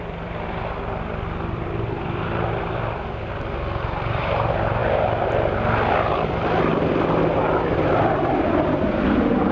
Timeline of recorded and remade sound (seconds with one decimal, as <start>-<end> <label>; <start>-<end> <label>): 0.0-4.8 remade; 4.8-6.1 recorded; 6.1-9.5 remade